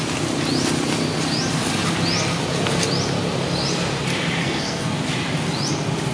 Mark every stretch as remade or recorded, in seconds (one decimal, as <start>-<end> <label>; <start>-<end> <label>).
0.0-4.4 recorded; 4.4-5.0 remade; 5.0-6.1 recorded